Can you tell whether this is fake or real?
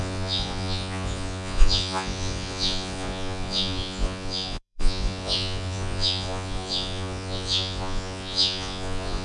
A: fake